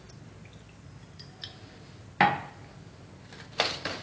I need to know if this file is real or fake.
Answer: real